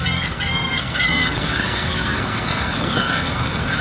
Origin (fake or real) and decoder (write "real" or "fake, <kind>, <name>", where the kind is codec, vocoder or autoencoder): fake, codec, SNAC